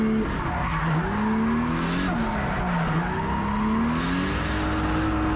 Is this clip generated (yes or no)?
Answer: no